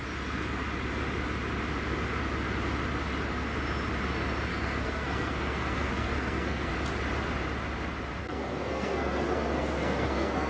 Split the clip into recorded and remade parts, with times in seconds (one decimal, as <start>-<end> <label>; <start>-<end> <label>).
0.0-4.5 recorded; 4.5-6.7 remade; 6.7-8.2 recorded; 8.2-10.5 remade